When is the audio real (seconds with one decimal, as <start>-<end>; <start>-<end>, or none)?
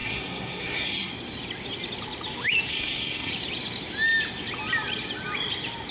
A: 1.1-2.7; 3.3-5.9